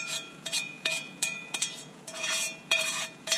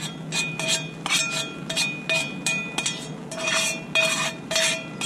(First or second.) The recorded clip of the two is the second